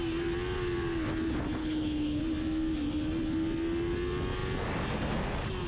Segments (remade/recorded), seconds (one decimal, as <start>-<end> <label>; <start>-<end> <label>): 0.0-1.6 recorded; 1.6-2.2 remade; 2.2-5.7 recorded